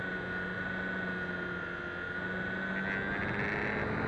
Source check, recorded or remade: recorded